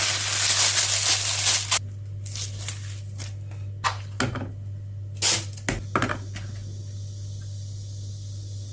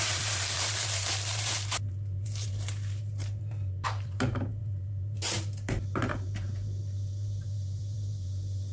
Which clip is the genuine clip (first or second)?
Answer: first